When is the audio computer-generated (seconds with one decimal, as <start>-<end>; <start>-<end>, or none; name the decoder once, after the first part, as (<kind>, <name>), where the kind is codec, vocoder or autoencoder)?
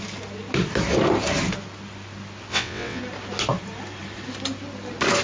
2.5-3.0 (vocoder, WaveNeXt)